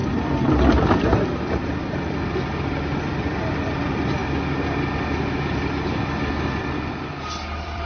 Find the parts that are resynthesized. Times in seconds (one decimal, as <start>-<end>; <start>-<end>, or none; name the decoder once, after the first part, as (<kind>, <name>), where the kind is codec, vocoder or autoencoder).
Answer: 0.0-4.2 (vocoder, BigVGAN v2); 6.1-7.9